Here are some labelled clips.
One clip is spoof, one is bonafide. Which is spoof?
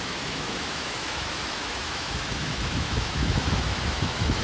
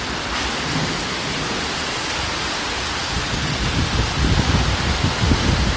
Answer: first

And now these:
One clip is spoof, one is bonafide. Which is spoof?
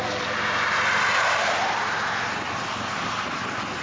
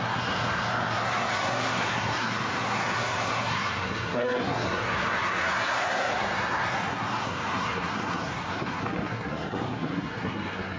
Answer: second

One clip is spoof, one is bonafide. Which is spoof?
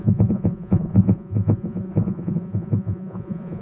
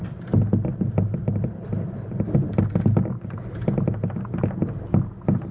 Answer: first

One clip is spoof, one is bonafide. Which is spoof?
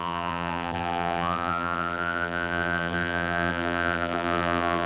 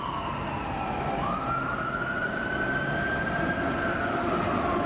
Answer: first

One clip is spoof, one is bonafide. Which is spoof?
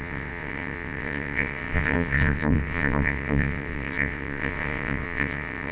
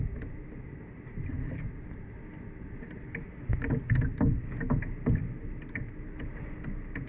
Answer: first